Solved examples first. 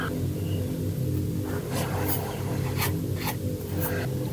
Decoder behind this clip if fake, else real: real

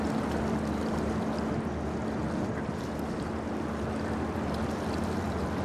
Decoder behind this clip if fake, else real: real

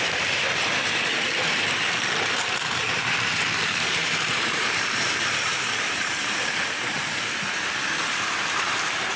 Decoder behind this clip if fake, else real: fake, vocoder, BigVGAN v2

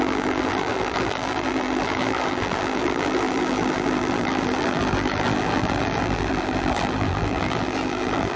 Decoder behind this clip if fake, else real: fake, vocoder, BigVGAN v2